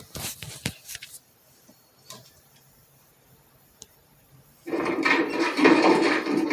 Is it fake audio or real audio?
fake